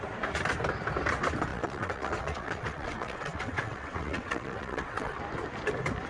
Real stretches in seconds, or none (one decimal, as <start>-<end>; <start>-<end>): 0.0-1.5; 5.2-6.1